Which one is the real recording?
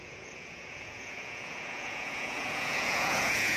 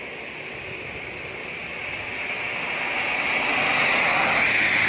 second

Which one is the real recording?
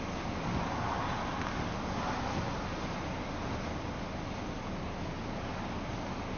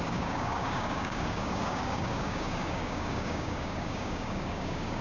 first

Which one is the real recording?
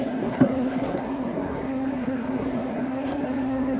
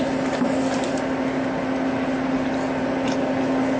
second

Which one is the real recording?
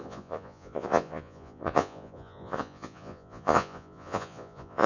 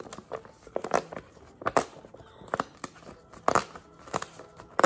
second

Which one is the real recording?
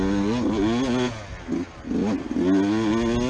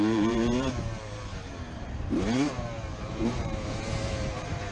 first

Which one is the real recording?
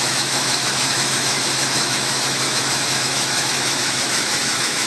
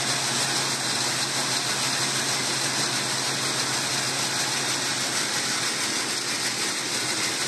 second